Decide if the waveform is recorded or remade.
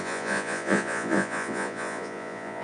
remade